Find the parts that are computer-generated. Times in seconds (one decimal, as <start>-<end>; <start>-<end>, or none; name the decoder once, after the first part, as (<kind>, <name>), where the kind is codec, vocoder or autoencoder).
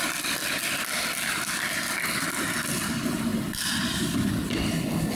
none